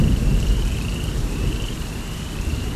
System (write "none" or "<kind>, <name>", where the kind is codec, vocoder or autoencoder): vocoder, BigVGAN v2